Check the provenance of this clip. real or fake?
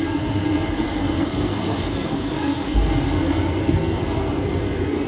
fake